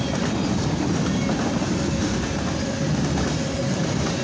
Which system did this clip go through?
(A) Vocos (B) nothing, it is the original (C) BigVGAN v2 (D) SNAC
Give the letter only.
B